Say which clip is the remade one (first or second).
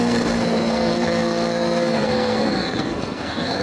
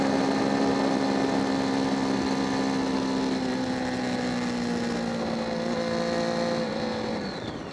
first